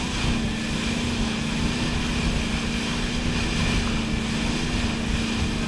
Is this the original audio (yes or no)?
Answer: yes